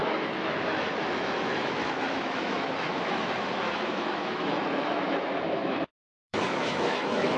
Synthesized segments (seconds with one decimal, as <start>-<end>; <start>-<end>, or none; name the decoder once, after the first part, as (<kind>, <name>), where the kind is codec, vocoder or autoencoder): 0.0-7.4 (autoencoder, DAC-VAE)